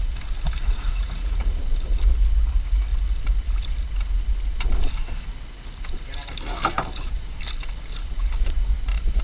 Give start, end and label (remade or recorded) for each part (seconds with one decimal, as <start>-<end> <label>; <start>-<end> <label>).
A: 0.0-0.6 recorded; 0.6-1.6 remade; 1.6-9.2 recorded